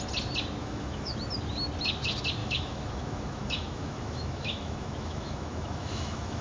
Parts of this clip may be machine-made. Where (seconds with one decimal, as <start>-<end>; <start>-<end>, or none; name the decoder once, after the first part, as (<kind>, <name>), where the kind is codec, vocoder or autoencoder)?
0.6-1.2 (autoencoder, DAC-VAE); 2.4-6.4